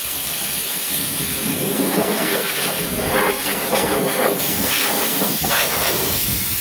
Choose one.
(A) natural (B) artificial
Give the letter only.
B